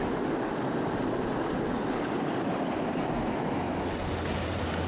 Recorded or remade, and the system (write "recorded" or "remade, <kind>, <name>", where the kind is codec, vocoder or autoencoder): recorded